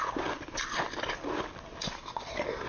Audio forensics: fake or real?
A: real